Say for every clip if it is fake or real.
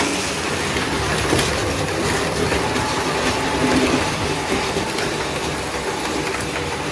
real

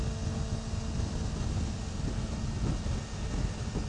real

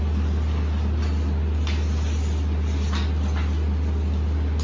real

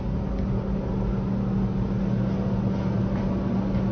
real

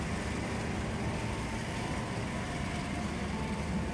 real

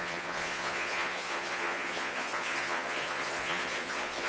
fake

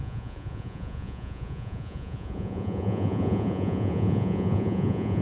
fake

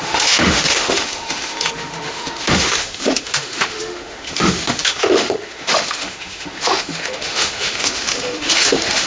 fake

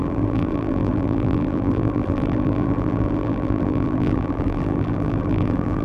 fake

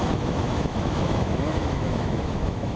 fake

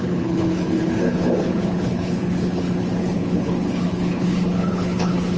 fake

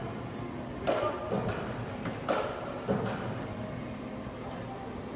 real